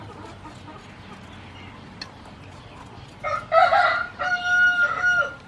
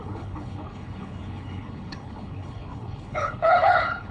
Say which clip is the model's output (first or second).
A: second